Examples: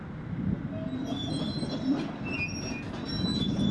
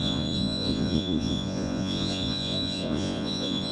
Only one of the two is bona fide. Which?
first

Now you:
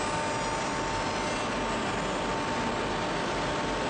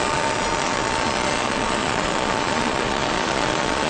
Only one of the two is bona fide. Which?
first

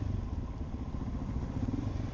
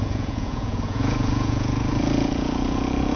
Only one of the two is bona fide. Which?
first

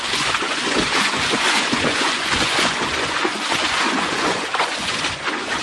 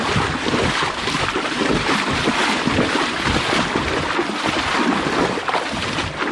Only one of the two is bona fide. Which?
second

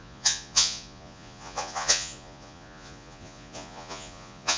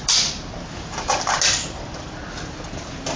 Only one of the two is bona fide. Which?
second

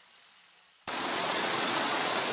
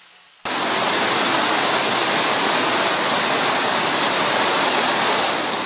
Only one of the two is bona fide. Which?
second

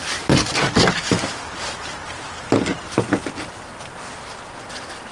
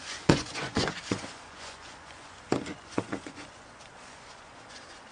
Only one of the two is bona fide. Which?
first